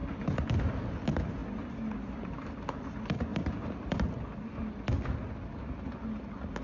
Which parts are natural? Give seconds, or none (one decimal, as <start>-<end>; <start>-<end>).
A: 0.0-6.6